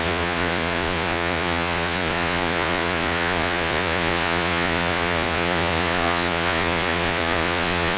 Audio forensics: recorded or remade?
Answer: remade